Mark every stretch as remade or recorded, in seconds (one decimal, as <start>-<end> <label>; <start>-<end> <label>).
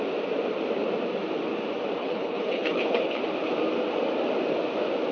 0.0-2.0 recorded; 2.0-3.2 remade; 3.2-5.1 recorded